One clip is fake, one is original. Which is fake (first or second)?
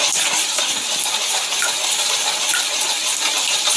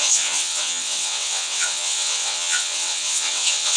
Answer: second